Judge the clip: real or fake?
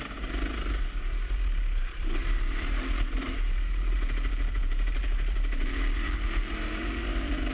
fake